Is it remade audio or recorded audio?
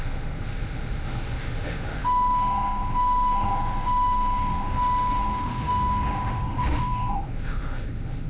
remade